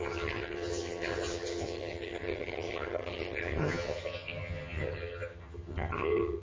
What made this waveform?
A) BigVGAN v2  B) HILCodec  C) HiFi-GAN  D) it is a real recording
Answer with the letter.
C